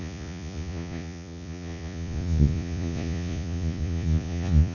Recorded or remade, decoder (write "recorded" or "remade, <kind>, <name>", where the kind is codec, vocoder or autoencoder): remade, vocoder, Vocos